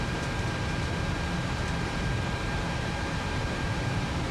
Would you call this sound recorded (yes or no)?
no